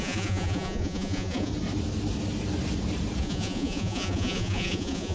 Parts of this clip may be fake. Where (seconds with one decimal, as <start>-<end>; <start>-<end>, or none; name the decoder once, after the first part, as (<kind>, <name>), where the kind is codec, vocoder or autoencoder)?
0.0-1.5 (vocoder, Vocos); 3.2-5.1